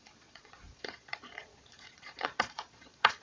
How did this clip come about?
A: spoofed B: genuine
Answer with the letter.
A